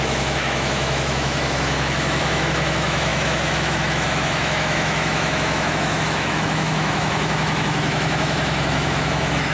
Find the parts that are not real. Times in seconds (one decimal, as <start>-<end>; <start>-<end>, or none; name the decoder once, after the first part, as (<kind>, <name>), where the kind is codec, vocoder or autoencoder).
0.0-9.5 (autoencoder, DAC-VAE)